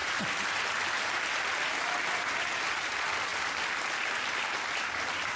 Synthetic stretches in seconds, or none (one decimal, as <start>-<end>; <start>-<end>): none